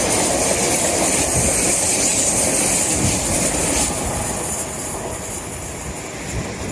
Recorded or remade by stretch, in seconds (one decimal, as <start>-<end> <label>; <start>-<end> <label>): 0.0-6.7 recorded